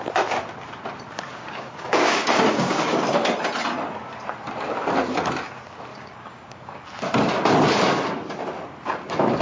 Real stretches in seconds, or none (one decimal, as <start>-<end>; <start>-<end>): 0.0-1.3; 2.9-5.9; 6.8-9.4